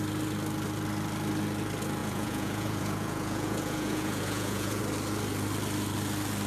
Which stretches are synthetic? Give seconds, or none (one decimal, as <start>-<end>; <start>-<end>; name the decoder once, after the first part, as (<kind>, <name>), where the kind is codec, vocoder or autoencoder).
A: 2.0-4.8 (vocoder, Vocos)